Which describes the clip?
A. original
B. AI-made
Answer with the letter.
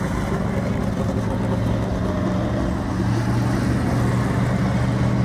A